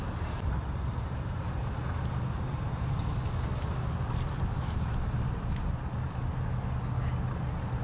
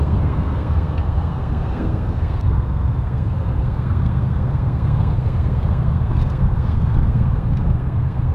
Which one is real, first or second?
first